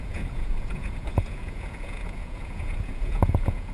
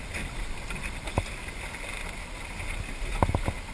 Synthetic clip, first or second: first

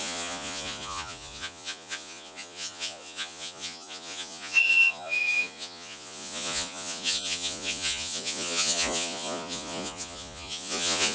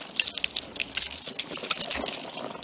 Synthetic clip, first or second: first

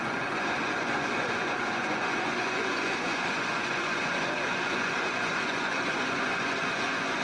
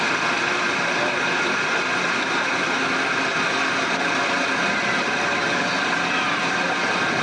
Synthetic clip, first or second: first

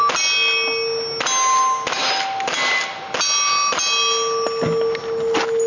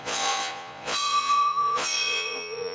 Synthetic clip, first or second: second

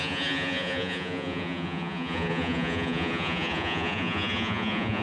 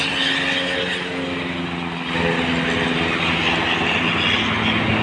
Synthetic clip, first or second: first